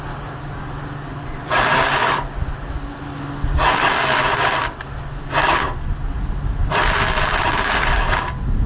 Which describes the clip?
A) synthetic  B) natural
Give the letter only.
B